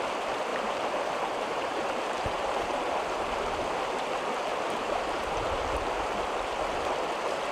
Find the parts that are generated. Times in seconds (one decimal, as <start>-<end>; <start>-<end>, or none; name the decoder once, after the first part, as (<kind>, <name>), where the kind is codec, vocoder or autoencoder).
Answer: 0.5-3.8 (vocoder, BigVGAN v2); 4.5-6.5